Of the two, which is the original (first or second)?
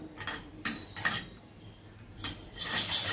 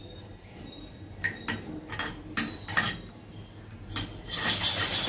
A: second